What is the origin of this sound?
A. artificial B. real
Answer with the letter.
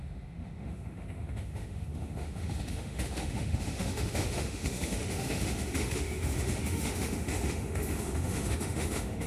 A